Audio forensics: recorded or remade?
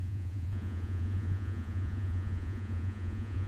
remade